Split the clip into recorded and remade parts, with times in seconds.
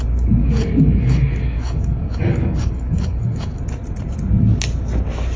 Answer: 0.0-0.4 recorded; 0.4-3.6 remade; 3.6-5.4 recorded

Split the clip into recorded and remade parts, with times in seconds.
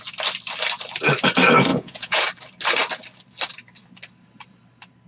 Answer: 0.0-1.7 recorded; 1.7-2.2 remade; 2.2-5.1 recorded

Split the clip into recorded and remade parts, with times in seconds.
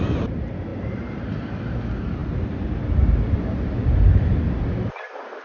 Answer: 0.0-5.4 recorded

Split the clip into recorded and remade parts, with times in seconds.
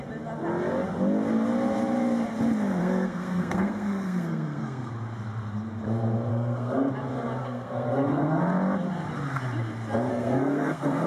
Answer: 0.0-2.8 recorded; 2.8-4.9 remade; 4.9-6.3 recorded; 6.3-6.9 remade; 6.9-7.4 recorded; 7.4-8.4 remade; 8.4-10.1 recorded; 10.1-11.1 remade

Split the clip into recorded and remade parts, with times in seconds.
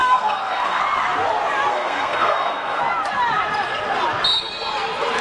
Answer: 0.0-0.8 remade; 0.8-1.7 recorded; 1.7-2.8 remade; 2.8-5.2 recorded